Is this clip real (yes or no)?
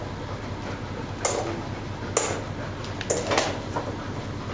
yes